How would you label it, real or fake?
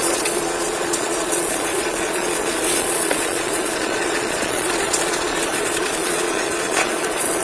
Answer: fake